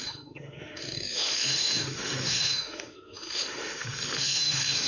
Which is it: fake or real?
fake